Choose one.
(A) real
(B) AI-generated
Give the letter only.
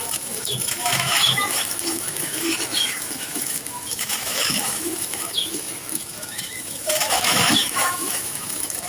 B